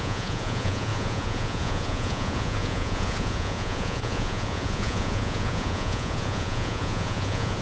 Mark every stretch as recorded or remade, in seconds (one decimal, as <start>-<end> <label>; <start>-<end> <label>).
0.0-7.6 remade